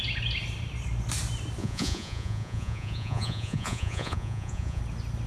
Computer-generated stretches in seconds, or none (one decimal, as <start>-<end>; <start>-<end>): 1.6-4.8